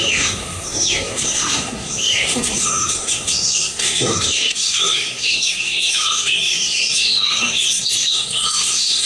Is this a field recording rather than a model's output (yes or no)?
no